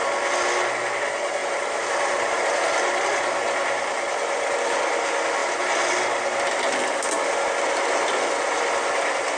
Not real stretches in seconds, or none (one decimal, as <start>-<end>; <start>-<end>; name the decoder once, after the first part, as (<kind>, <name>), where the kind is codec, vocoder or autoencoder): 1.4-2.7 (vocoder, BigVGAN v2)

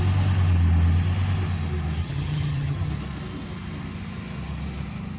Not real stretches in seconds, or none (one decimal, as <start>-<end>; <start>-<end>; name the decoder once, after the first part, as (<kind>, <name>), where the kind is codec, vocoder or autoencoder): 2.0-2.9 (vocoder, HiFi-GAN)

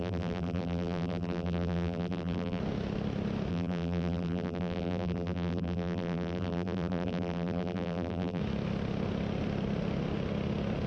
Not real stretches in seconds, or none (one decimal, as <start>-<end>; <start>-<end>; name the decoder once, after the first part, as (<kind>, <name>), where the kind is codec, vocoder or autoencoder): 0.0-2.6 (vocoder, BigVGAN v2); 3.5-8.4

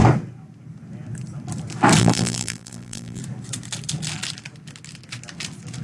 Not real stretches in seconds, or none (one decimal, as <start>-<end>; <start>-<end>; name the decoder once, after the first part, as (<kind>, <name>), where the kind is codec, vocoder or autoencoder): 2.0-3.2 (vocoder, BigVGAN v2)